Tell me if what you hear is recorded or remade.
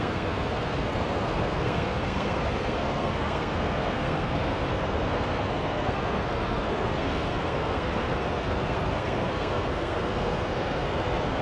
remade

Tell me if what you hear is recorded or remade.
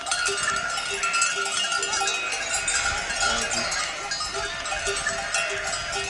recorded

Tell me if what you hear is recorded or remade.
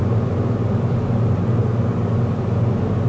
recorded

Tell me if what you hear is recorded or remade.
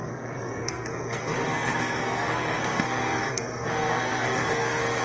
remade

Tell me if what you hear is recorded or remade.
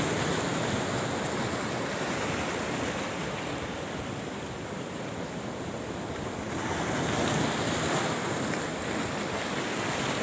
recorded